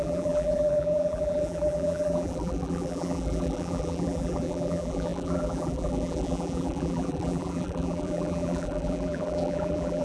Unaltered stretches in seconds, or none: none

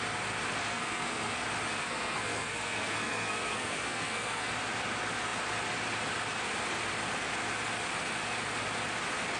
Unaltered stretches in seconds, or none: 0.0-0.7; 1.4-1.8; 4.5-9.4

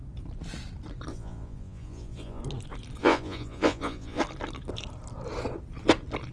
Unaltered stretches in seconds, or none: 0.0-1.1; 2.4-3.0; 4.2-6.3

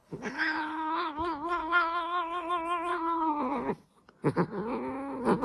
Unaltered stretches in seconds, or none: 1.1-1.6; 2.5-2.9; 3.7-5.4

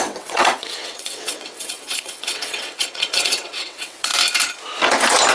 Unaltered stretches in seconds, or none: 4.1-5.3

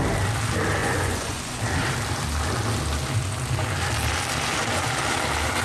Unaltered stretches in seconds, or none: 0.0-0.8; 1.6-5.6